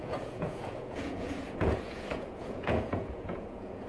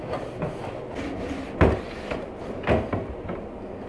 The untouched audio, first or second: second